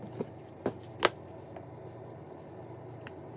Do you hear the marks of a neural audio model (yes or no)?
no